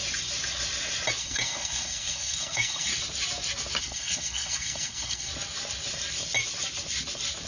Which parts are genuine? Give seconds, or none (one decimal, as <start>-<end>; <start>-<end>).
0.0-1.2; 2.9-3.8; 5.3-7.5

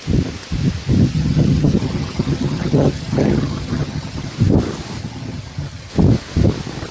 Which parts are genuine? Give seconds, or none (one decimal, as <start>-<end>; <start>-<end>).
0.0-1.1; 4.3-5.0; 5.9-6.9

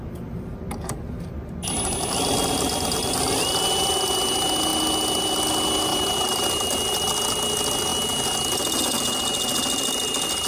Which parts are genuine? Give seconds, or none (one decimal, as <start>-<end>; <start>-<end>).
0.0-5.9; 6.4-10.5

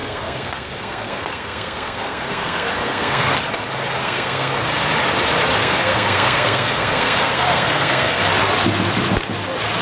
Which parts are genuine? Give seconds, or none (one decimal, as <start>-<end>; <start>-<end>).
3.3-4.0; 4.5-5.6; 8.2-9.8

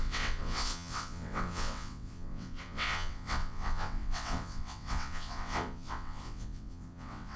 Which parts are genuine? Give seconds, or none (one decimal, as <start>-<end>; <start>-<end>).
none